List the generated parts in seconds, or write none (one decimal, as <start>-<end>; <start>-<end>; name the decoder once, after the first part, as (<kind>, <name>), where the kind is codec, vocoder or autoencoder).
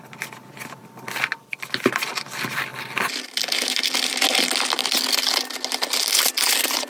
none